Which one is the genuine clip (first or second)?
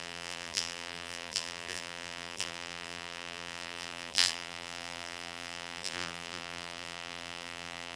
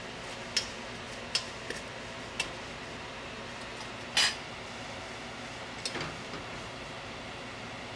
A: second